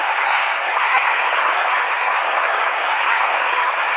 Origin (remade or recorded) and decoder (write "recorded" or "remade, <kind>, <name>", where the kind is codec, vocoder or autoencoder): remade, codec, SNAC